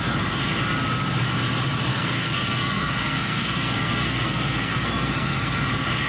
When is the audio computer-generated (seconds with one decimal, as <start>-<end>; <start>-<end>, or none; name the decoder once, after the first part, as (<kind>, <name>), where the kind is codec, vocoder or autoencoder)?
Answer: 1.9-5.6 (codec, SNAC)